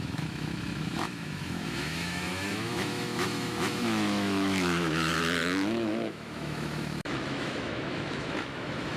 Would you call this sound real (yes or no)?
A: no